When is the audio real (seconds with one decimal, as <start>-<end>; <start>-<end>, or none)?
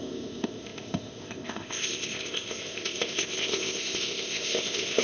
none